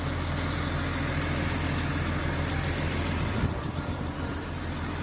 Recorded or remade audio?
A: recorded